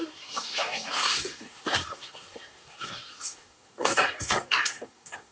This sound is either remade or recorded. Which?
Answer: remade